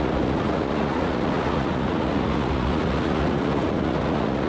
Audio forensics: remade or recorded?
remade